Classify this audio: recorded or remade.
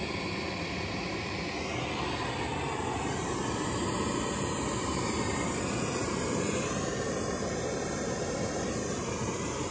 remade